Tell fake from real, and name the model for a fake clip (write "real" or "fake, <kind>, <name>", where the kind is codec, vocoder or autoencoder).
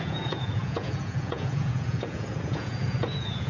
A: fake, vocoder, Vocos